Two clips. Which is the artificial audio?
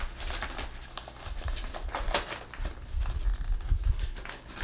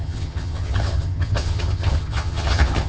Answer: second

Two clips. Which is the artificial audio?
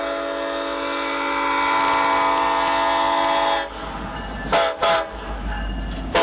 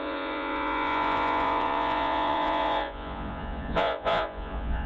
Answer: second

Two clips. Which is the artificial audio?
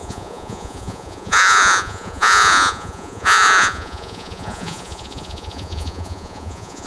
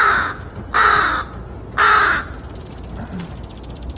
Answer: first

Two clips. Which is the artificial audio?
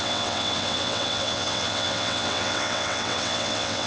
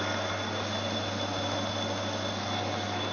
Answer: first